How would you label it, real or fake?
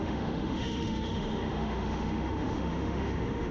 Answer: fake